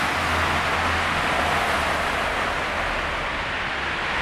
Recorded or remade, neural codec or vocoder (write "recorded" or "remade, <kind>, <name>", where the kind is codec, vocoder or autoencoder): recorded